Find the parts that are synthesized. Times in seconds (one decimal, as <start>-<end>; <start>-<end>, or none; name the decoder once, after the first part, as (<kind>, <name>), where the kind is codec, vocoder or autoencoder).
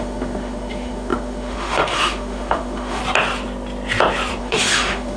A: 0.0-3.0 (autoencoder, DAC-VAE); 4.4-5.2